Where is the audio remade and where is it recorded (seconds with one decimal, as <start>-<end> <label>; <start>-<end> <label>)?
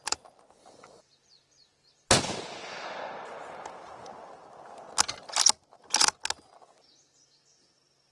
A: 0.0-8.1 recorded